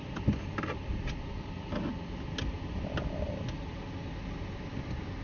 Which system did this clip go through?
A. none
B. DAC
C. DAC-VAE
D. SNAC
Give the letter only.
A